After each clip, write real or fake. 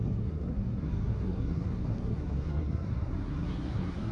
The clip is fake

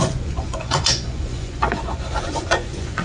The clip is fake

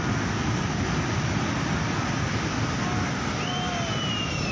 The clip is real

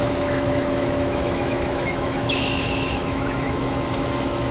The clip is fake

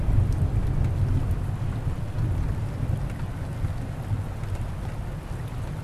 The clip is real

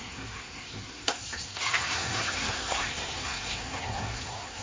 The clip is fake